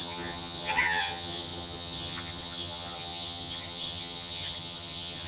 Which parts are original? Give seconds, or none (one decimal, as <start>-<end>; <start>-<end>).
none